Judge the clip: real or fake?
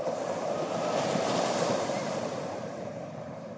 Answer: fake